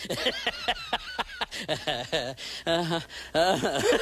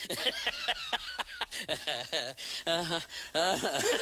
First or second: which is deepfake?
second